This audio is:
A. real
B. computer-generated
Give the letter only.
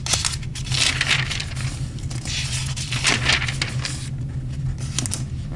A